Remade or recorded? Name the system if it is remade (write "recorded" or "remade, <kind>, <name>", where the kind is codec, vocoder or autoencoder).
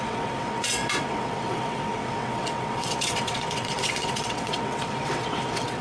remade, vocoder, WaveNeXt